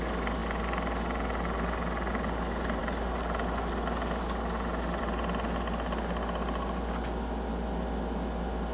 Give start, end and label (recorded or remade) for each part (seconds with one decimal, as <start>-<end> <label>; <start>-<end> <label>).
0.0-8.7 recorded